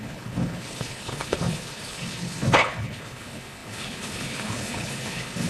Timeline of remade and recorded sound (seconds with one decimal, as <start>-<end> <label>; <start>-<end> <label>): 0.0-5.5 remade